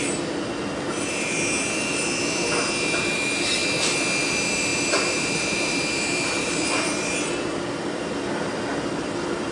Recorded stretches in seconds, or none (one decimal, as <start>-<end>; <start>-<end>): 3.6-4.2